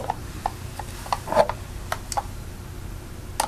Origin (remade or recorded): recorded